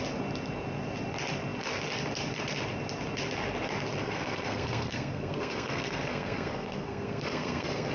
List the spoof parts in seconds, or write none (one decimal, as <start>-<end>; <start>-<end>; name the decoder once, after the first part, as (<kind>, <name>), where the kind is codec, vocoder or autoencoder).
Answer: 4.0-7.9 (codec, SNAC)